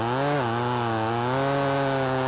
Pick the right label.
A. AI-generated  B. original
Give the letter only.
B